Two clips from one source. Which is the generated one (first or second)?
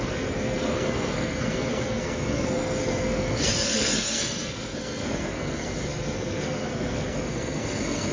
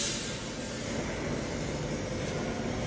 first